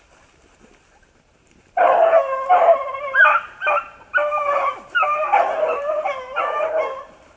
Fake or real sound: fake